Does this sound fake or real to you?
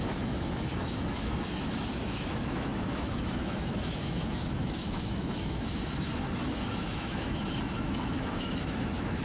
fake